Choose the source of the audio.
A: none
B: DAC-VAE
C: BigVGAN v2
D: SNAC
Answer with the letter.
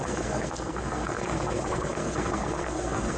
D